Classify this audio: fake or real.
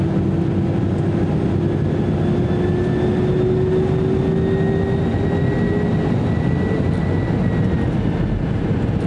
real